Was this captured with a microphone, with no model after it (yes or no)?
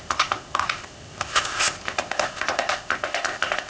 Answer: no